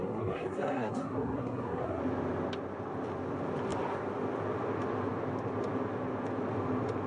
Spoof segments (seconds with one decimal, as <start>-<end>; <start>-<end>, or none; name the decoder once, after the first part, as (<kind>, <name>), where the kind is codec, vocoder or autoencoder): 0.0-2.0 (codec, SNAC)